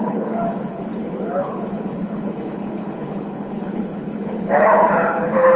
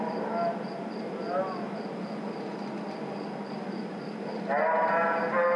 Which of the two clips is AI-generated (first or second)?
first